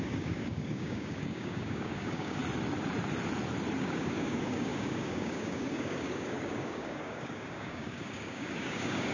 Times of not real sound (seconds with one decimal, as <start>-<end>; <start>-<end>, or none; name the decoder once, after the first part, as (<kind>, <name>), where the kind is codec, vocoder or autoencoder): 0.0-2.4 (codec, DAC); 3.8-9.1